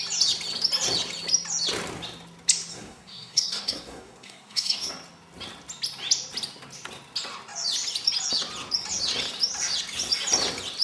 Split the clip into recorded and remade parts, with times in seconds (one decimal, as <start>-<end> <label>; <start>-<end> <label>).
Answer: 0.0-2.7 recorded; 2.7-4.9 remade; 4.9-10.8 recorded